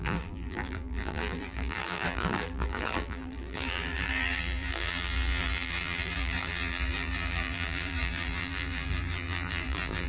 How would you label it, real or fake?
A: fake